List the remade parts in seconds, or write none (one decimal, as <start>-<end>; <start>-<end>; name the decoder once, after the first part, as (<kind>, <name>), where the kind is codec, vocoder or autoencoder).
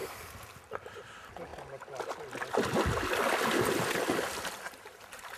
0.8-1.5 (vocoder, BigVGAN v2); 4.7-5.4